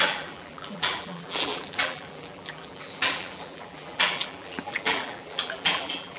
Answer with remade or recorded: remade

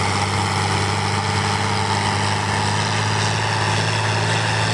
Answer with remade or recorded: recorded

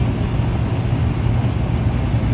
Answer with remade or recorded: recorded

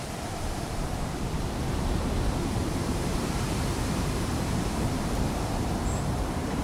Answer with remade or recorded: remade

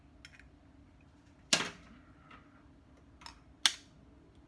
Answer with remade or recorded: recorded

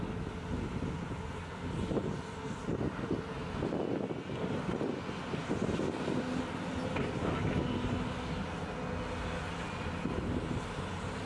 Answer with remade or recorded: recorded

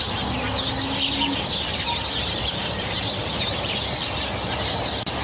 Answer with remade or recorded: recorded